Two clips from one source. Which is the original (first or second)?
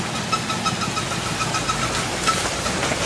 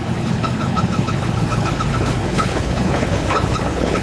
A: first